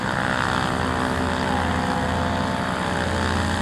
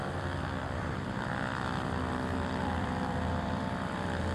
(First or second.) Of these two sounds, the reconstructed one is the second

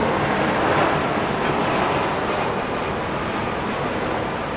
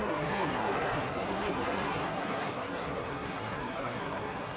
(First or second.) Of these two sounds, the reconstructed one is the second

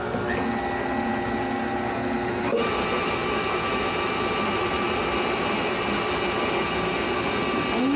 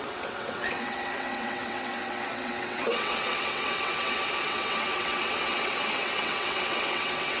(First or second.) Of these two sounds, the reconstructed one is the second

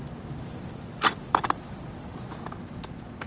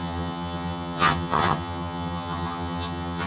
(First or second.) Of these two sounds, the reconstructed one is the second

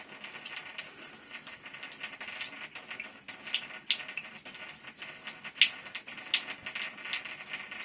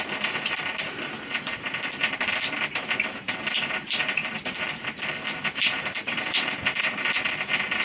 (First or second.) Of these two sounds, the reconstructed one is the second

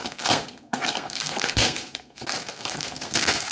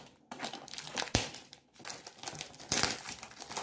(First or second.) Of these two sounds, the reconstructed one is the first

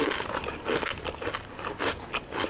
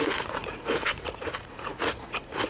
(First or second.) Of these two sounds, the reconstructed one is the second